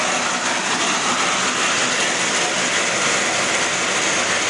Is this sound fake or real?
real